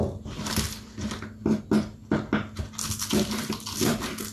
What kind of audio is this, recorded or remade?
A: recorded